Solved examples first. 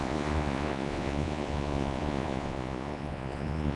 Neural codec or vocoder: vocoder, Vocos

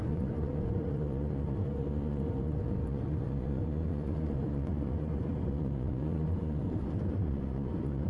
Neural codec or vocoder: vocoder, Vocos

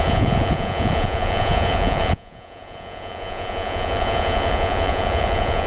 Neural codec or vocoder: vocoder, Vocos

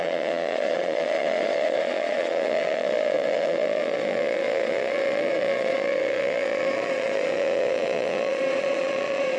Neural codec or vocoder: vocoder, Vocos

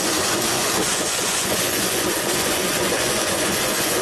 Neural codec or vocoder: vocoder, Vocos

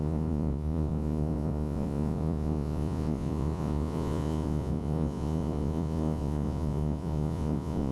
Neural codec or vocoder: vocoder, Vocos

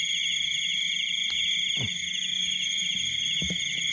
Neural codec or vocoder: none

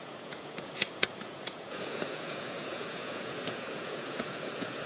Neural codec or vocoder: vocoder, Vocos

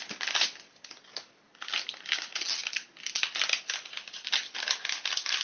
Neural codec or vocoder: none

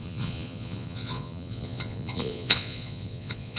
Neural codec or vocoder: vocoder, Vocos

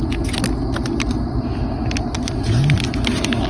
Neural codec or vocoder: none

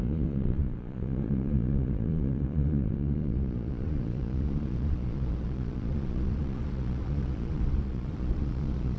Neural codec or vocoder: vocoder, Vocos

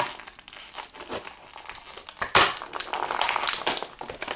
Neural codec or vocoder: none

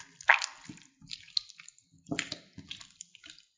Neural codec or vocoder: none